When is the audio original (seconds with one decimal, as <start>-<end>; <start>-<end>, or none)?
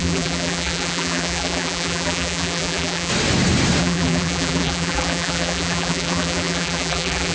3.1-3.8